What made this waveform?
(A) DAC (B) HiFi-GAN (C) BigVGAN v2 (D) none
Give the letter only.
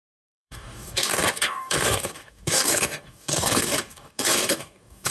A